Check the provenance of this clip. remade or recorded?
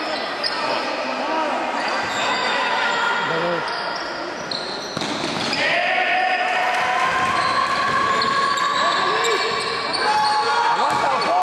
recorded